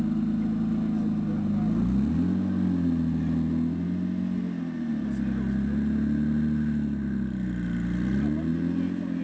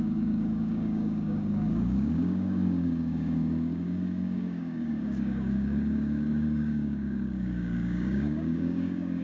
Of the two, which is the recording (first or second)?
first